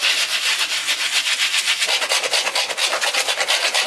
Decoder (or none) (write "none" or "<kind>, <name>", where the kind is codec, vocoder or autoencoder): none